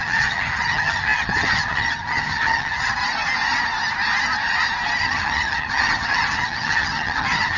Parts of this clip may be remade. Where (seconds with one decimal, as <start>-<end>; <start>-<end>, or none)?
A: 0.0-3.0; 5.0-7.6